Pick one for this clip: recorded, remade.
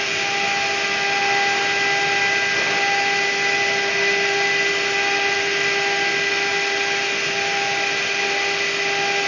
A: recorded